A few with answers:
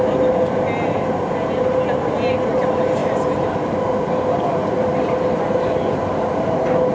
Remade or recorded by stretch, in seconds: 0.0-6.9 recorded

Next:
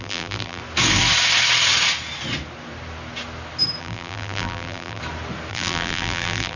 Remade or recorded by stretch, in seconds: 0.0-0.6 remade; 0.6-3.8 recorded; 3.8-5.0 remade; 5.0-5.5 recorded; 5.5-6.6 remade

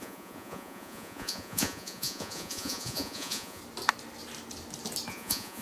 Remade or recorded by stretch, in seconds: 0.0-3.6 remade; 3.6-5.1 recorded; 5.1-5.6 remade

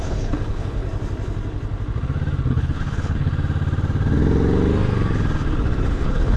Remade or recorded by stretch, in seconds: 0.0-0.8 remade; 0.8-2.5 recorded; 2.5-3.3 remade; 3.3-5.9 recorded; 5.9-6.4 remade

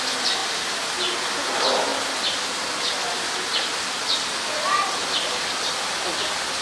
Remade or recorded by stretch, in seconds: 0.0-6.6 recorded

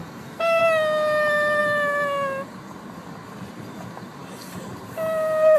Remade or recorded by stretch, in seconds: 0.0-0.6 remade; 0.6-5.6 recorded

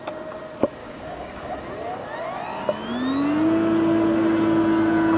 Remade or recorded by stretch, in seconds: 0.0-0.8 recorded; 0.8-1.5 remade; 1.5-5.2 recorded

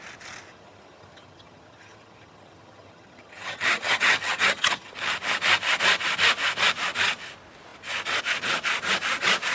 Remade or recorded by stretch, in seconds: 0.0-0.5 recorded; 0.5-4.9 remade; 4.9-9.5 recorded